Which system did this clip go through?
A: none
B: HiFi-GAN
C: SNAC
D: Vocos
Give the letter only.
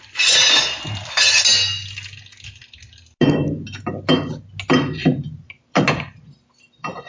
A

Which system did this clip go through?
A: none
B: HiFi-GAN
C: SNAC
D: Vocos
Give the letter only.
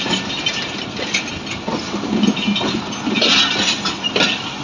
A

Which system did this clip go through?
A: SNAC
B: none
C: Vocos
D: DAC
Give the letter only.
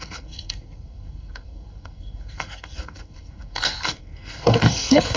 A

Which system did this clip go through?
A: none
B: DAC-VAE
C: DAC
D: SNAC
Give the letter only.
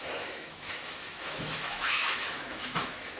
B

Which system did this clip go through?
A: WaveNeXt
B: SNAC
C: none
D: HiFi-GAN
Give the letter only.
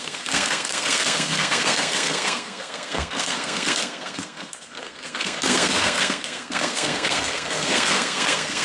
B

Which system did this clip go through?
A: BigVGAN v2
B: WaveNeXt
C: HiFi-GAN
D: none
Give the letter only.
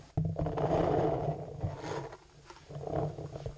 D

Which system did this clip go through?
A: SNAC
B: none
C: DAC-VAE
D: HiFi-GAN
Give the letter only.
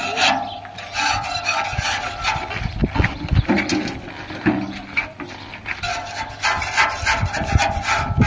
B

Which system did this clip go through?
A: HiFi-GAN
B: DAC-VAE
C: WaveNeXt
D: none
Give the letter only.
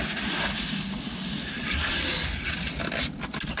D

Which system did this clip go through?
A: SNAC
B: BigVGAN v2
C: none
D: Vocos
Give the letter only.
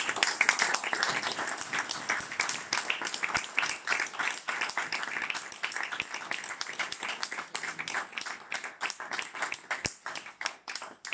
C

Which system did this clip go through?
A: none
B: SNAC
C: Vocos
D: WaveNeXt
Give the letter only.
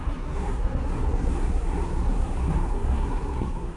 B